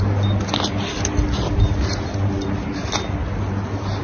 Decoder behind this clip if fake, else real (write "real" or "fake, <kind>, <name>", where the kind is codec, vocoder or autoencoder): real